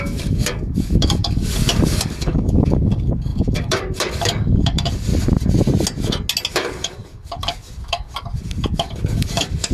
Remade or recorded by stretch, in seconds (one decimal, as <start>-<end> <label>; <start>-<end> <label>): 0.0-5.1 remade; 5.1-6.5 recorded; 6.5-9.7 remade